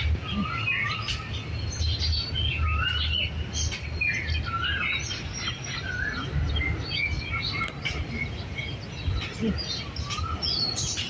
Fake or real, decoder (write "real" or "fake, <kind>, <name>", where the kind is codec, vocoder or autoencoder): real